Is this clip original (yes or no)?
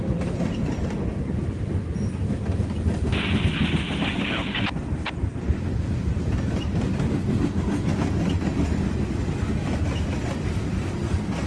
yes